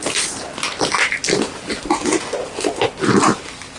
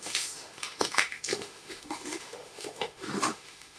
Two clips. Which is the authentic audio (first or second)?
first